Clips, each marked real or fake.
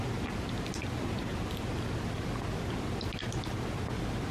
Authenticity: real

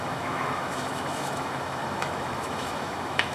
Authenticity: fake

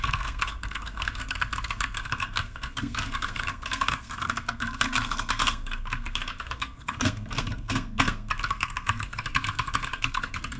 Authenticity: fake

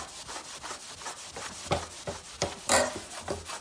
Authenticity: real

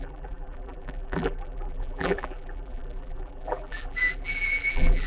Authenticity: fake